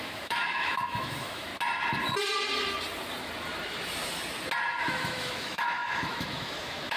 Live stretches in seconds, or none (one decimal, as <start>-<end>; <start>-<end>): 1.5-4.8